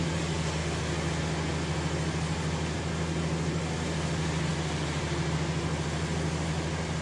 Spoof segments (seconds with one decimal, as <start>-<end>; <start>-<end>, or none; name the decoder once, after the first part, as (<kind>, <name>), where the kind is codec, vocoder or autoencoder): none